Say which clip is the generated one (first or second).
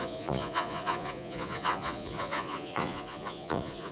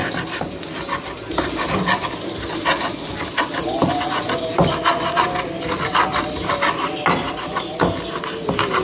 first